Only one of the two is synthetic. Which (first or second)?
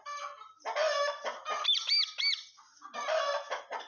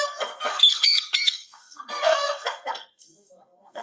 second